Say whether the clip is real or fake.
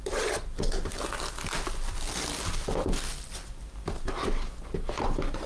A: real